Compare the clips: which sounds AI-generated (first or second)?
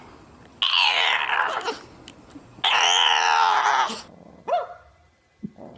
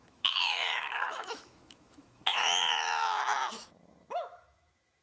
second